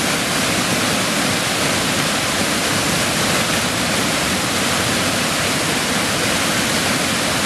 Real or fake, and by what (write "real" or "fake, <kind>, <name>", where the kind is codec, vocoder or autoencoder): fake, vocoder, BigVGAN v2